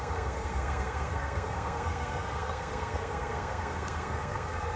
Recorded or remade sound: remade